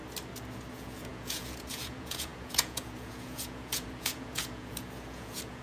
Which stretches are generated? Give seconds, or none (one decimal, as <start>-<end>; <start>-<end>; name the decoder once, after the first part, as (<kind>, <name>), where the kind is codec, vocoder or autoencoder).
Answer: 0.7-5.6 (vocoder, Vocos)